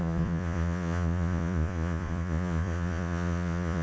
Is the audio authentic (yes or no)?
no